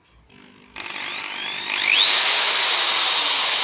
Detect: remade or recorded recorded